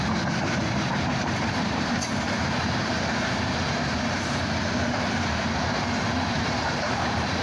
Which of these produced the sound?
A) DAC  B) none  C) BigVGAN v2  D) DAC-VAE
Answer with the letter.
C